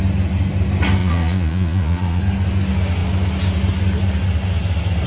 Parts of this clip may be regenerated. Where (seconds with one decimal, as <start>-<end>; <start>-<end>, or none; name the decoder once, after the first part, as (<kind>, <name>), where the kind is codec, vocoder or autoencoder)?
1.0-2.2 (vocoder, Vocos)